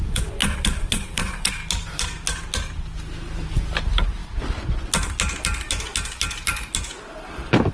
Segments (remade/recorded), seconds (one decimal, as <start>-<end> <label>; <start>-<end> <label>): 0.0-0.4 recorded; 0.4-1.5 remade; 1.5-7.7 recorded